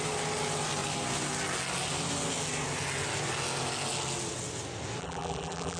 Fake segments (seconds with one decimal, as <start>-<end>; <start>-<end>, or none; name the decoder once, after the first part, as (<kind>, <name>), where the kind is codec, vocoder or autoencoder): 5.0-5.8 (vocoder, BigVGAN v2)